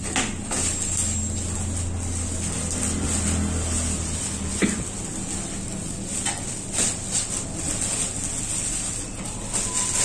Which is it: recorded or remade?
recorded